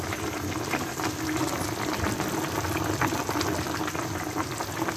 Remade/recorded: recorded